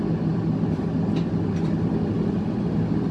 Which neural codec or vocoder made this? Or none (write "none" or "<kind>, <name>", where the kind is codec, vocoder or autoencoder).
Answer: none